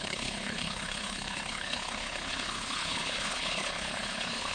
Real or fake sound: fake